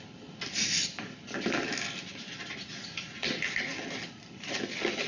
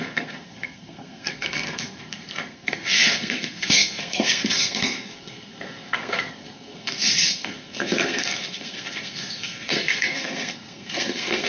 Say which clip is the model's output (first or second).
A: second